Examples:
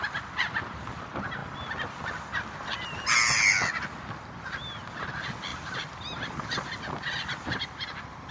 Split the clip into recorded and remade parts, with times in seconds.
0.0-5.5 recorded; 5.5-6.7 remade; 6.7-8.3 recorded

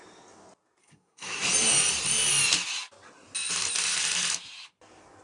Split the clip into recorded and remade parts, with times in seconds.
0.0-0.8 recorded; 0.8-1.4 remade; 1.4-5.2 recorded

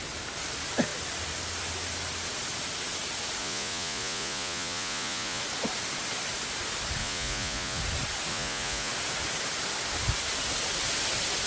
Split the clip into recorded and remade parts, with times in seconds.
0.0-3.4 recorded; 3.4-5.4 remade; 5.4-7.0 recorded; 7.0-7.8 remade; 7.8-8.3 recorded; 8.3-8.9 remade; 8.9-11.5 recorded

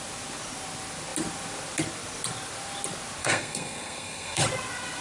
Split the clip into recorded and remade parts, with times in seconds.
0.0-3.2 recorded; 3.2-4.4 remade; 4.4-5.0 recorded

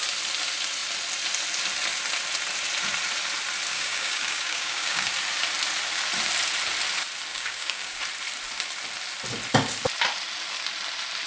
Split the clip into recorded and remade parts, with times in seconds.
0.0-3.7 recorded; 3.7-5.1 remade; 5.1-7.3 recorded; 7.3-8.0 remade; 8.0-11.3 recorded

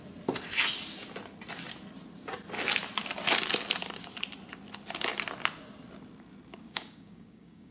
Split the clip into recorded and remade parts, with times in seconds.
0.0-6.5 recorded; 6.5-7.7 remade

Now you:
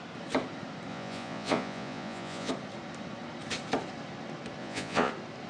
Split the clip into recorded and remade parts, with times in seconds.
0.0-0.9 recorded; 0.9-2.5 remade; 2.5-4.6 recorded; 4.6-5.1 remade; 5.1-5.5 recorded